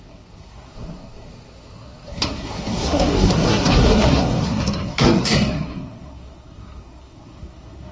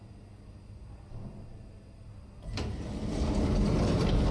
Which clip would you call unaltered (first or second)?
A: second